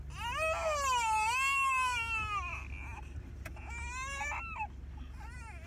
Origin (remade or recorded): recorded